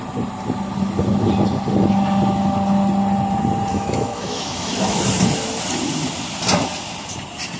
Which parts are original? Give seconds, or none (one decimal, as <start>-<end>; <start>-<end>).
0.0-3.7; 5.0-7.6